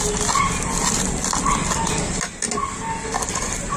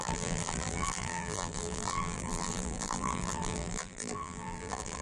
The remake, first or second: second